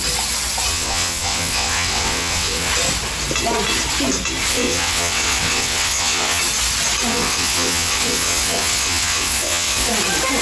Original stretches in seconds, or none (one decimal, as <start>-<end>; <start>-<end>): 0.0-0.7; 2.7-4.5; 6.4-7.1; 9.9-10.4